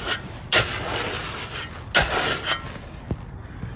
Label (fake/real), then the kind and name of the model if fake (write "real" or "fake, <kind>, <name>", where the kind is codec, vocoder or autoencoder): real